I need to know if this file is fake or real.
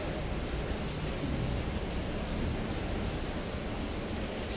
real